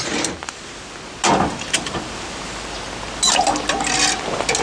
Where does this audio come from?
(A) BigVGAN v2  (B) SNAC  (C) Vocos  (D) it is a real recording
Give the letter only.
D